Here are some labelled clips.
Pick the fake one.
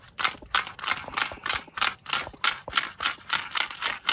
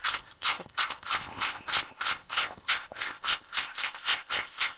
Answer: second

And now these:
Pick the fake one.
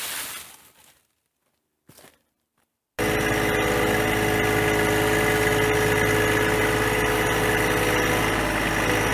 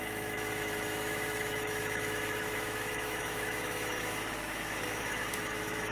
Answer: second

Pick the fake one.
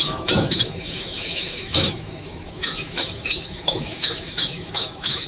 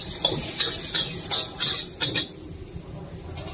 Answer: first